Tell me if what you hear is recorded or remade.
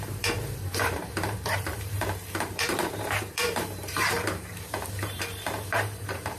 remade